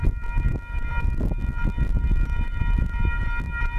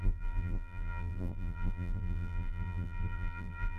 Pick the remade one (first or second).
second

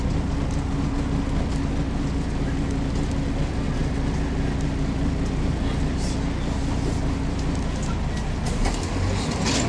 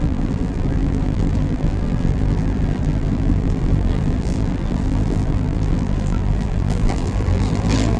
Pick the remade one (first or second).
second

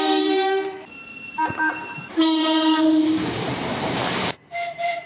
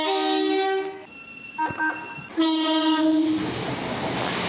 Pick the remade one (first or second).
first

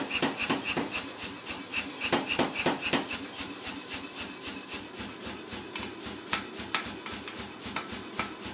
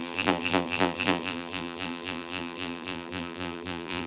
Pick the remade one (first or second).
second